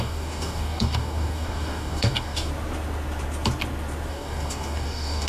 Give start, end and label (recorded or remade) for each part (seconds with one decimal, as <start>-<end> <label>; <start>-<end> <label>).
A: 0.0-2.5 remade; 2.5-4.1 recorded; 4.1-5.3 remade